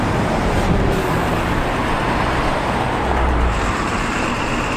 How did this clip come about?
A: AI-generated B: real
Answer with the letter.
A